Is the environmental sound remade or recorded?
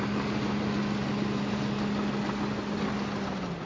recorded